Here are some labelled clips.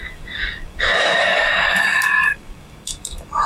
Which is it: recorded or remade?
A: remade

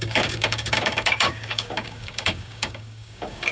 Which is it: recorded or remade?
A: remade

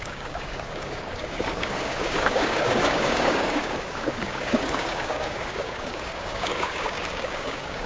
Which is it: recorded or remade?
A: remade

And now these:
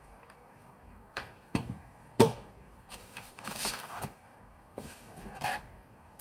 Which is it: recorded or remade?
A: remade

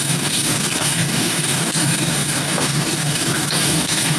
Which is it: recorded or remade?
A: remade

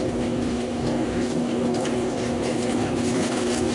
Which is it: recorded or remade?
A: remade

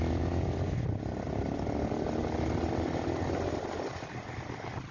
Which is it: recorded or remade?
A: recorded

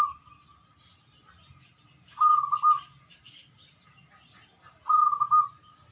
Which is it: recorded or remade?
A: recorded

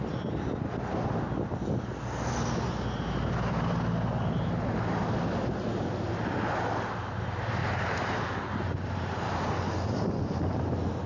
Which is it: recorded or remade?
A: recorded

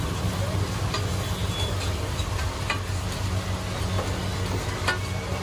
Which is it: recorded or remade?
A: recorded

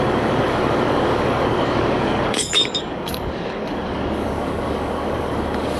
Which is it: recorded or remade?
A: remade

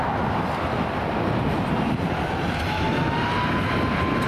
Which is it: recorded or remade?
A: recorded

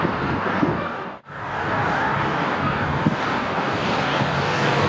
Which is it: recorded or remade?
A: remade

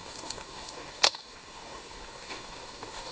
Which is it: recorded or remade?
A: remade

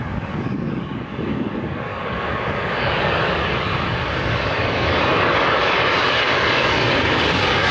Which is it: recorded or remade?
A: remade